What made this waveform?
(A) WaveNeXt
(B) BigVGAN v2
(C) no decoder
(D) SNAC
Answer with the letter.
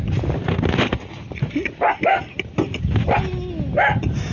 C